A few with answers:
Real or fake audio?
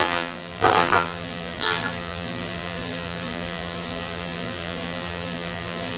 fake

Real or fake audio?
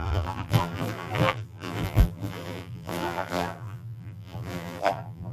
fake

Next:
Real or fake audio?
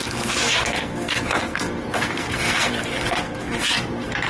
fake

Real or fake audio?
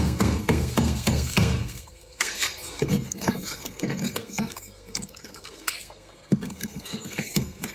fake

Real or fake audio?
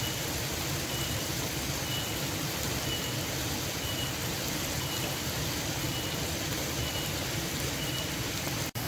fake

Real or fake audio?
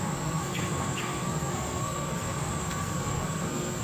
fake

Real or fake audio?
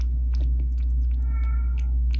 real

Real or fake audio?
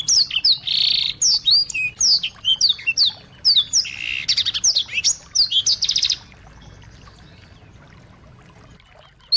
real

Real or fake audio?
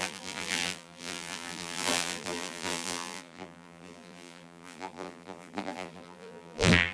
fake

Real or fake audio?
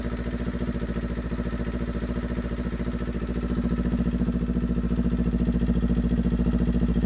real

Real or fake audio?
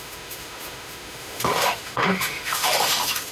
fake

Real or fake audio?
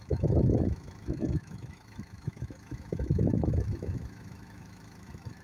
fake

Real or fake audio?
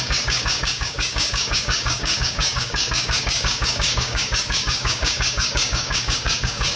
fake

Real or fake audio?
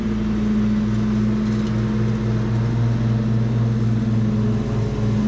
real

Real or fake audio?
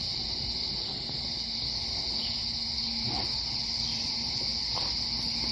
real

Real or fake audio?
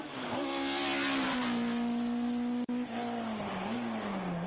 real